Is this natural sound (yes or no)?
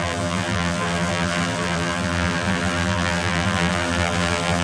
no